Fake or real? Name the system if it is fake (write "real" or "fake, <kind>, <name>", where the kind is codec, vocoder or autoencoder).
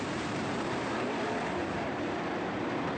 fake, vocoder, BigVGAN v2